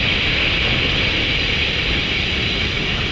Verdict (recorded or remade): recorded